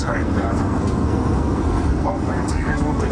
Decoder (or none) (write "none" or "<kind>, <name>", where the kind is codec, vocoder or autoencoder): codec, SNAC